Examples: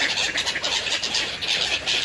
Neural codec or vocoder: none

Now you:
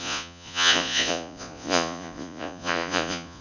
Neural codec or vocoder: vocoder, Vocos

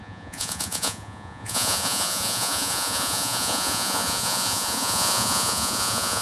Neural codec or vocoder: vocoder, Vocos